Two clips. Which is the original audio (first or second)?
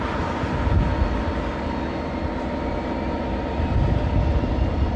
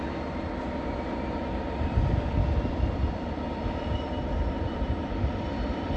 first